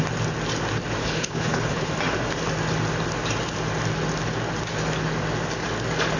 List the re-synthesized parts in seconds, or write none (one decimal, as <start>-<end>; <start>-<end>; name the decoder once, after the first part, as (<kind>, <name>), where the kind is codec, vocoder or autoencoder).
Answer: 1.0-1.9 (codec, HILCodec)

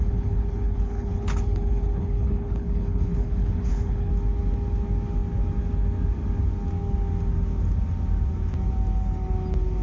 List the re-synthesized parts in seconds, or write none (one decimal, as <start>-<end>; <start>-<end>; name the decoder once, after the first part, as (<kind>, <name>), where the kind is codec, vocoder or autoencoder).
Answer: 0.0-4.1 (codec, HILCodec)

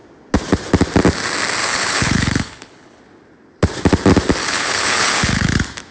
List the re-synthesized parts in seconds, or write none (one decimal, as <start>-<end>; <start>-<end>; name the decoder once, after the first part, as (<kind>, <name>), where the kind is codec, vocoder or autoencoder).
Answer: 1.6-3.0 (codec, HILCodec); 4.4-5.5

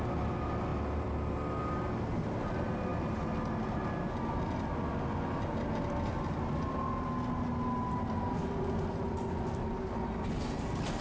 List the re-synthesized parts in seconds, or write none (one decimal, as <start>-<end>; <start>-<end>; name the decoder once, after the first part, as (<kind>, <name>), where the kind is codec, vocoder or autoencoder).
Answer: none

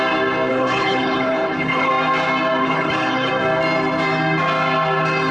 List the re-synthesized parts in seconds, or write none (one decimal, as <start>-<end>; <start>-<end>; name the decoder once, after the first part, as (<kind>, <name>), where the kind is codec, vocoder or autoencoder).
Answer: 0.5-1.9 (codec, HILCodec); 2.6-3.3

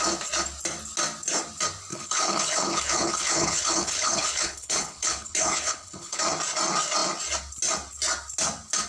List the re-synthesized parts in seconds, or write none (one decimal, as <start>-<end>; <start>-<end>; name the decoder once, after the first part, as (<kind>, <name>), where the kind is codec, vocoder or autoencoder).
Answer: 1.9-6.2 (codec, HILCodec)

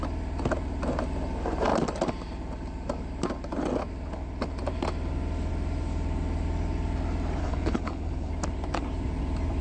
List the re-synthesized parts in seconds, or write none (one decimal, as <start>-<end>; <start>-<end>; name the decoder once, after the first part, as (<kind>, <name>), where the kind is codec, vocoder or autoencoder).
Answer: 7.4-8.3 (codec, HILCodec)

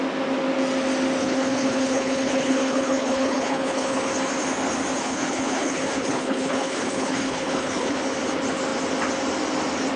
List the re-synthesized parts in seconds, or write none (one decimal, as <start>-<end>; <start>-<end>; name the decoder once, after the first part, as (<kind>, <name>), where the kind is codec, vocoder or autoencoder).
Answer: 1.2-4.1 (codec, HILCodec); 5.0-8.0